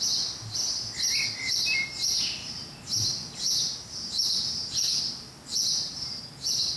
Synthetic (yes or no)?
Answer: no